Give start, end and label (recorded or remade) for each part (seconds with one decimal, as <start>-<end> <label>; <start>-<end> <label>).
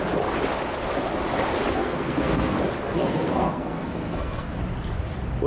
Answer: 0.0-1.8 recorded; 1.8-2.5 remade; 2.5-3.0 recorded; 3.0-4.6 remade; 4.6-5.5 recorded